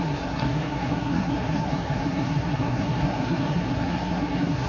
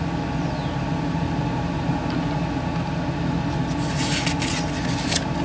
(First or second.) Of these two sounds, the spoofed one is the first